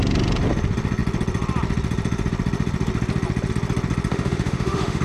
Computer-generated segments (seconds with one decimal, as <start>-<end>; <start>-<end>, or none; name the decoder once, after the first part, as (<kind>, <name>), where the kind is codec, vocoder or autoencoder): 4.1-5.0 (autoencoder, DAC-VAE)